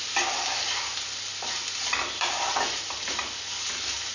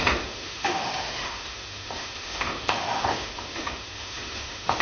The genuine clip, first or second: first